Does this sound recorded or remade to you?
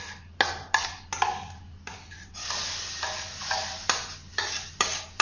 recorded